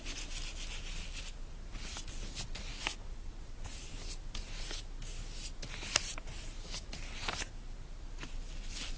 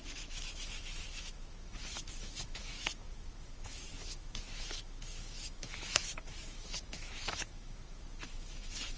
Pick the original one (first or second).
first